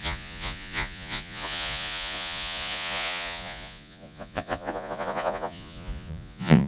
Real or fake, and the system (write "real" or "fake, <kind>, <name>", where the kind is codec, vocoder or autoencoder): fake, vocoder, Vocos